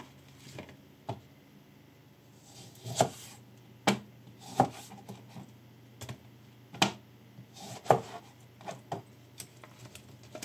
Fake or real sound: real